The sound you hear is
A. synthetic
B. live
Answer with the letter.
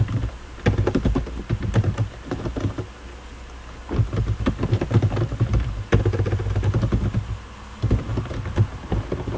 B